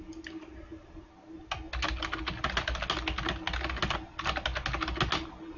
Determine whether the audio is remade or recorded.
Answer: recorded